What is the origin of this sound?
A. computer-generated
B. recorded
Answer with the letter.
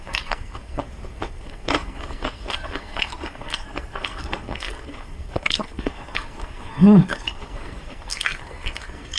A